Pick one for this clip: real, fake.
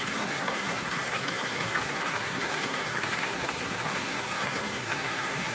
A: fake